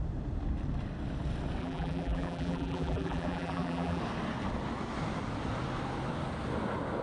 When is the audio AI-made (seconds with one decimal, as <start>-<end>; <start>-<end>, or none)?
1.6-4.0